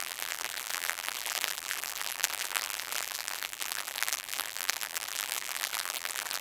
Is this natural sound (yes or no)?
no